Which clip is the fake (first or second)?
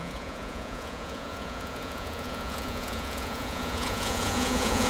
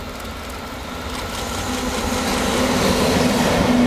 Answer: first